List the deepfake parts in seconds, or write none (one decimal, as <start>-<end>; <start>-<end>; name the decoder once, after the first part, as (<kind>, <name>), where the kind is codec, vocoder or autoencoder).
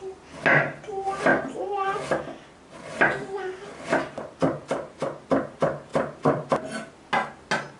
5.9-6.5 (vocoder, BigVGAN v2)